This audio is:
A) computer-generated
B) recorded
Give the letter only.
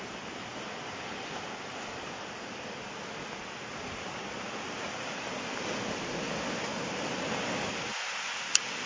B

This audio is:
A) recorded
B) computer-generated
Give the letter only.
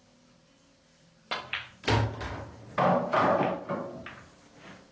A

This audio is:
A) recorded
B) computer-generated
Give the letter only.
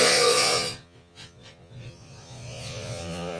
B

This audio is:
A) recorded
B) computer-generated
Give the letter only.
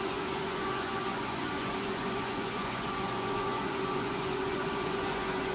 B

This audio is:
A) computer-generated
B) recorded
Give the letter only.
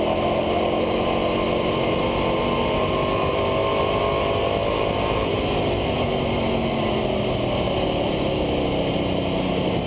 B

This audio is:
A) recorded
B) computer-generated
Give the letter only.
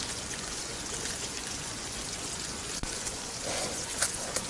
B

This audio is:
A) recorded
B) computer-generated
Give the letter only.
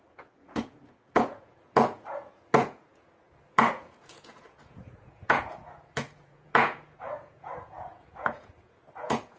B